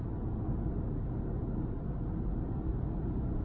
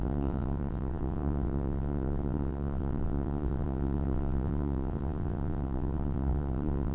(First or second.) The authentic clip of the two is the first